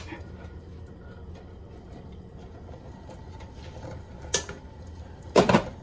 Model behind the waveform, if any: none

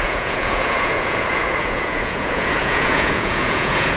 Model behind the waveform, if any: vocoder, Vocos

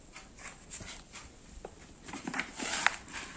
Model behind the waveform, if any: none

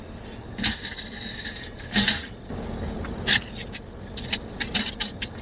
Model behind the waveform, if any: none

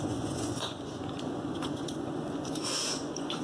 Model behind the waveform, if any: vocoder, Vocos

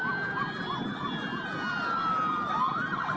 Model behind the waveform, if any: none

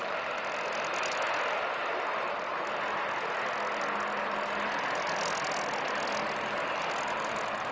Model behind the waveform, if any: none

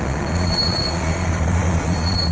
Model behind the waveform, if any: vocoder, Vocos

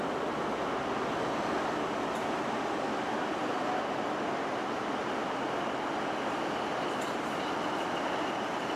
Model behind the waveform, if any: none